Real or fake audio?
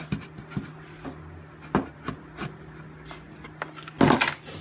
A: real